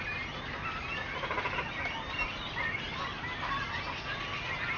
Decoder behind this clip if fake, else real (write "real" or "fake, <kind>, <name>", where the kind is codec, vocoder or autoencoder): real